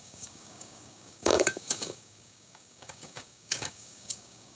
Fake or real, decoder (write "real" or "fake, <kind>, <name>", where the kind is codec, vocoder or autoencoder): fake, codec, DAC